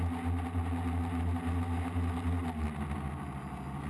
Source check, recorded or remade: recorded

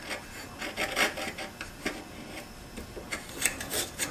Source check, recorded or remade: recorded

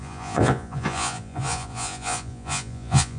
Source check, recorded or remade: remade